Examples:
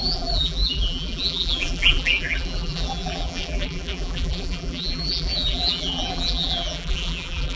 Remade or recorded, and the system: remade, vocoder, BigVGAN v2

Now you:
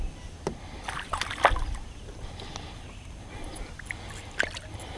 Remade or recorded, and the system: recorded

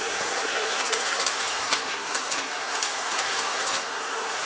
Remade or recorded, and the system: remade, codec, SNAC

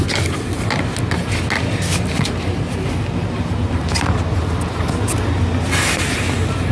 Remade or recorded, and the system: recorded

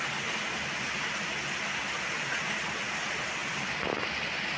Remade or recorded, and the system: recorded